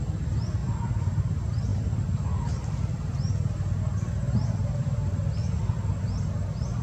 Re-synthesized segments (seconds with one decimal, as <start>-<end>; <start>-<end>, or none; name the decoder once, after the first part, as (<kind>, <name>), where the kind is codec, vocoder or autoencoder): none